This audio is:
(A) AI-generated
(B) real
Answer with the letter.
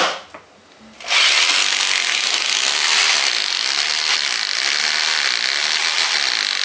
B